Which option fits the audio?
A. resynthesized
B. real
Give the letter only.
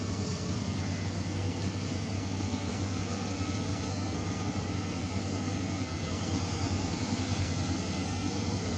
A